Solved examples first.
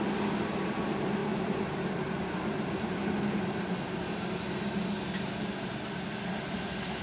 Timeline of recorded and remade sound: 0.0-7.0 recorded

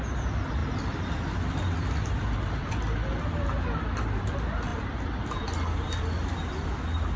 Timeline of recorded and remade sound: 0.0-7.2 recorded

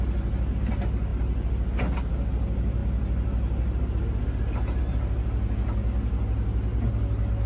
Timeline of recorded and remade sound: 0.0-7.5 recorded

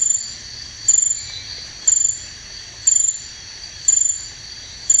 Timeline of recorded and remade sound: 0.0-5.0 recorded

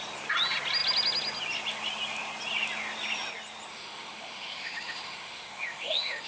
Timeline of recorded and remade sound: 0.0-3.7 recorded; 3.7-6.3 remade

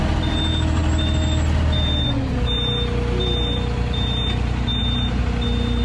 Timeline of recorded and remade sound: 0.0-5.8 recorded